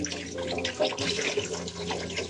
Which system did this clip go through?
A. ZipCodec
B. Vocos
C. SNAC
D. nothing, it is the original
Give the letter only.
D